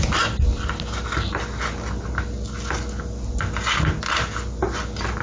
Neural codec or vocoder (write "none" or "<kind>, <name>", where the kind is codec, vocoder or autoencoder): none